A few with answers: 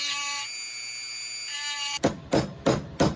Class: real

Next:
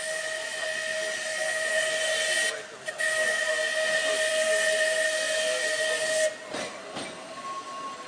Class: real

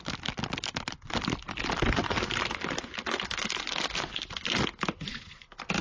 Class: real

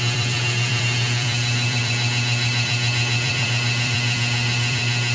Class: fake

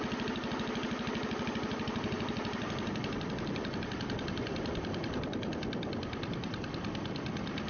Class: real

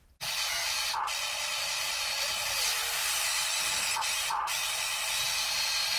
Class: real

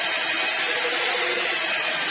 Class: real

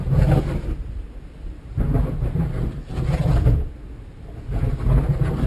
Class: real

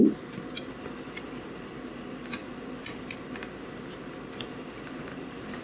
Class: real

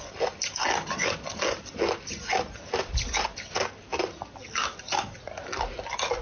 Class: real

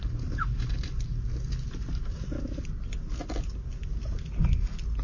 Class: real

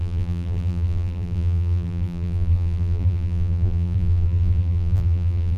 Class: fake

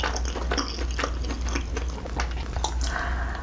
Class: real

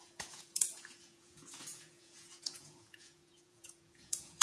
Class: fake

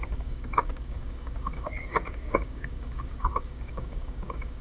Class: fake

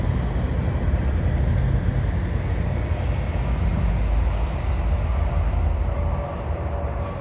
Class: real